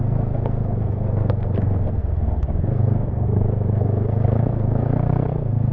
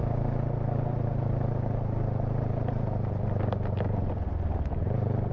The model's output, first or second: first